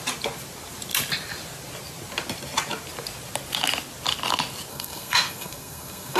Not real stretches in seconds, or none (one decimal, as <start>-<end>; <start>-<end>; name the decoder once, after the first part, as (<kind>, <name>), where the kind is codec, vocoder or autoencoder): 4.7-6.2 (codec, SNAC)